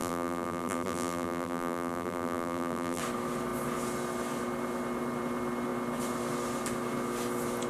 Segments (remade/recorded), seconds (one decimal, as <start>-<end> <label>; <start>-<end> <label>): 0.0-3.0 remade; 3.0-7.7 recorded